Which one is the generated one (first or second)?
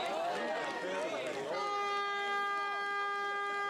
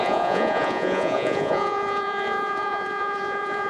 second